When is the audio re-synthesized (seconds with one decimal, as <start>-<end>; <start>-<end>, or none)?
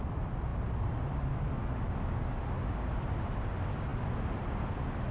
none